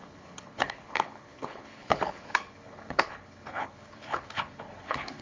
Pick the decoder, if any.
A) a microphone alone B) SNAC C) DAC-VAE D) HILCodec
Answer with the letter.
D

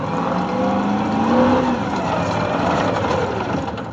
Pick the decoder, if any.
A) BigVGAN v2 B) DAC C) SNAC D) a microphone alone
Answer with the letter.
D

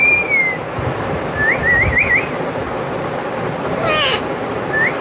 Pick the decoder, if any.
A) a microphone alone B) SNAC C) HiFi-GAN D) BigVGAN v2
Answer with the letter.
A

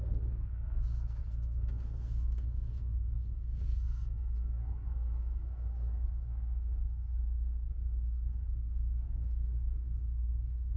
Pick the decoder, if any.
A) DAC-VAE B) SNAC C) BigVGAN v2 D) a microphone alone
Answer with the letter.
B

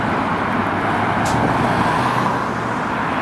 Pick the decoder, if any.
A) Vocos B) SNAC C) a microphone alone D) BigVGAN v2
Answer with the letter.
C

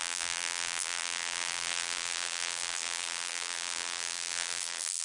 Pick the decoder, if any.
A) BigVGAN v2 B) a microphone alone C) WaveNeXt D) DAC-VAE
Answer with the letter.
A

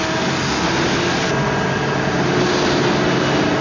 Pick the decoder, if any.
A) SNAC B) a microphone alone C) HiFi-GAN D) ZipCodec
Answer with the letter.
B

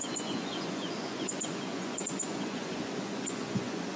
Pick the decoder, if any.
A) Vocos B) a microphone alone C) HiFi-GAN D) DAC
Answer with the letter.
A